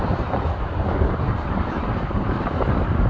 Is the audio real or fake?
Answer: fake